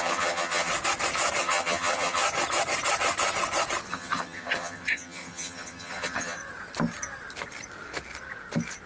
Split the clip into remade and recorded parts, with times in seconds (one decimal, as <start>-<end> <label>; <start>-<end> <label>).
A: 0.0-0.7 remade; 0.7-1.4 recorded; 1.4-2.2 remade; 2.2-3.9 recorded; 3.9-6.4 remade; 6.4-8.9 recorded